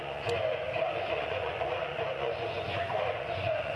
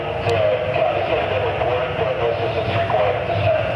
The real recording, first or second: second